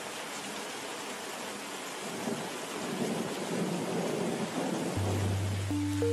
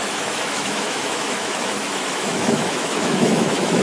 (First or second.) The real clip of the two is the first